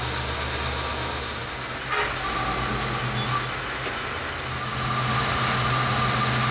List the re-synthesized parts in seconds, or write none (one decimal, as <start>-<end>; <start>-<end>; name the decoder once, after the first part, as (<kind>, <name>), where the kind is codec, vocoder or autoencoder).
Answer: none

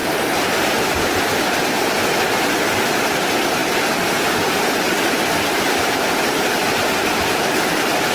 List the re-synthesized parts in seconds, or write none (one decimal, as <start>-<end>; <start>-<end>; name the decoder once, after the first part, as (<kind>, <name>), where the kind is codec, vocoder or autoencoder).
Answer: 0.0-0.8 (vocoder, BigVGAN v2); 3.6-7.4

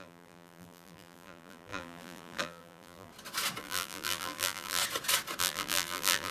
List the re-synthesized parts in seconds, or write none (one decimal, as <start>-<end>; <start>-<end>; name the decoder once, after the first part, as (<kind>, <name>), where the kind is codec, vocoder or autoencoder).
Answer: 0.0-3.1 (vocoder, BigVGAN v2); 3.6-4.8; 5.4-6.3

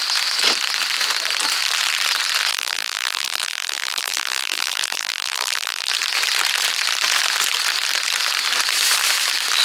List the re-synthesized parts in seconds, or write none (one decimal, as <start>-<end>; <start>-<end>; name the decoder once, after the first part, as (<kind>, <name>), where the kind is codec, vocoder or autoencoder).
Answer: 2.5-5.9 (vocoder, BigVGAN v2)

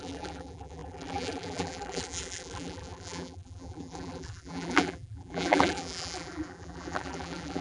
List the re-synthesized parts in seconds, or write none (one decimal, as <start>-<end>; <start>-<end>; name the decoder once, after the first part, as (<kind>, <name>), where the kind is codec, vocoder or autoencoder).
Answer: 0.0-7.6 (vocoder, BigVGAN v2)